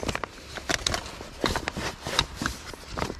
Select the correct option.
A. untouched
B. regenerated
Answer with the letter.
A